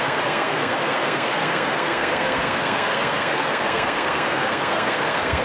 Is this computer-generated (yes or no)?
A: yes